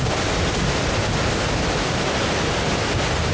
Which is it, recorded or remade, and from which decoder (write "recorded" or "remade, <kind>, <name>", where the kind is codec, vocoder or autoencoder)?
recorded